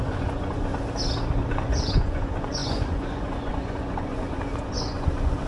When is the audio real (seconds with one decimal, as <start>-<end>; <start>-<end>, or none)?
0.7-1.5